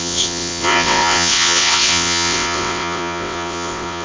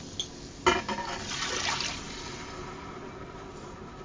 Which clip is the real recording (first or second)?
second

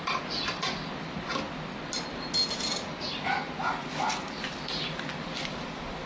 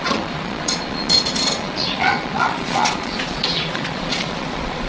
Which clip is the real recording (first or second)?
first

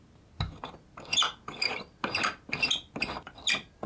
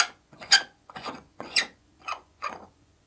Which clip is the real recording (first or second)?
first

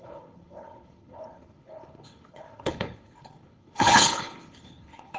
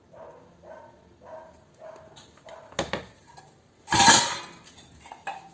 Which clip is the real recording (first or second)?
second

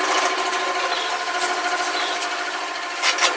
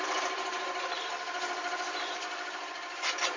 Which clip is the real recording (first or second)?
first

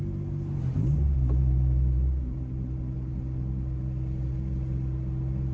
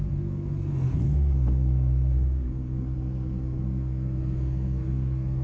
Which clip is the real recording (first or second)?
first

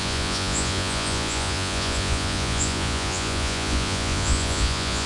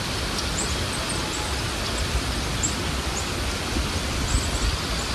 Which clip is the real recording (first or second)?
second